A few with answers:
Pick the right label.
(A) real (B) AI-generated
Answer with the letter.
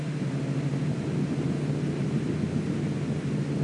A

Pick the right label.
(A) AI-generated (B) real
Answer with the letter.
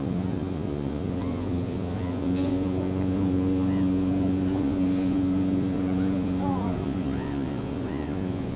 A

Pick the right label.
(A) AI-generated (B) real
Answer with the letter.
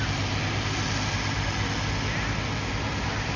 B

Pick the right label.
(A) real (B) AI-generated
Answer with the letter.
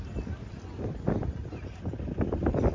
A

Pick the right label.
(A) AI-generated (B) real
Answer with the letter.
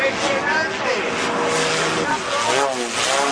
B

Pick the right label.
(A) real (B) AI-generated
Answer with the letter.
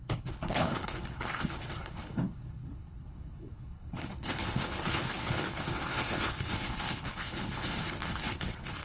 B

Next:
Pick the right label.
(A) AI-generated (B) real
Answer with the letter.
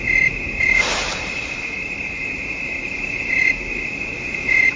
A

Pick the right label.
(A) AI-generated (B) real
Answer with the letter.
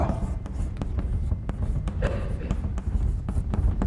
A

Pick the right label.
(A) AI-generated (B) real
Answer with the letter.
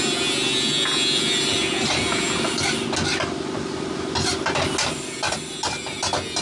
B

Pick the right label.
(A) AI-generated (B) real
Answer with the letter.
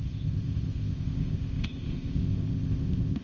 A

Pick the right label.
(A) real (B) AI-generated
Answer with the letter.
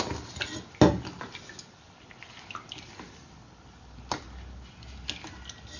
A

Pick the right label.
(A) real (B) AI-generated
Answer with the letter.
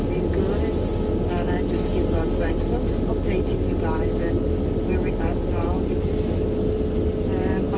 A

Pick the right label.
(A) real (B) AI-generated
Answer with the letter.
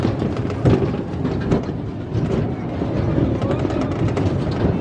A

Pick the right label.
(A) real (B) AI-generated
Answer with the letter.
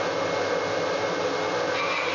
A